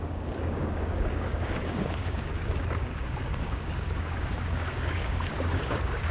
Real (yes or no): no